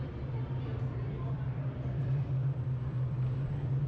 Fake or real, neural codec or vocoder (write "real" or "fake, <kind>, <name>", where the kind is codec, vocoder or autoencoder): fake, vocoder, BigVGAN v2